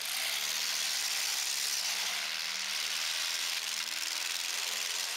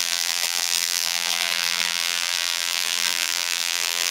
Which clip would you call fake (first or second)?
second